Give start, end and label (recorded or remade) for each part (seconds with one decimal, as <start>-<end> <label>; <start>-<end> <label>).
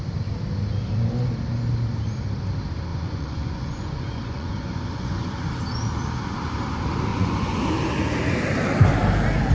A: 0.0-2.9 recorded; 2.9-5.5 remade; 5.5-7.1 recorded; 7.1-7.6 remade; 7.6-9.5 recorded